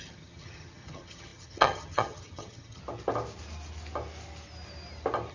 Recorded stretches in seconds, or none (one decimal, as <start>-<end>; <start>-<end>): 2.8-5.3

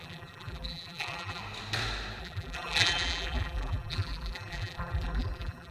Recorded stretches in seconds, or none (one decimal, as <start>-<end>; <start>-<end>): 1.4-2.2

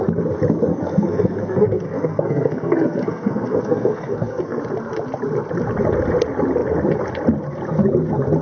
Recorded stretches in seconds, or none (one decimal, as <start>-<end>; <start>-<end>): 0.0-0.7; 4.6-8.4

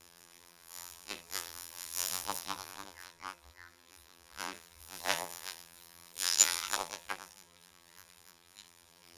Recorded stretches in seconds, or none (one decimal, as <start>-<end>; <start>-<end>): none

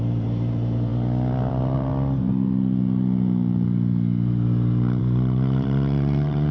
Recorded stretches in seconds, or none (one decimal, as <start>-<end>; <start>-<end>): 0.9-1.5; 1.9-5.0